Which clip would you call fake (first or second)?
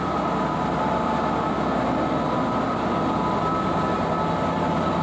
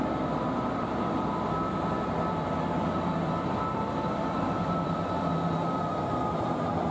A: second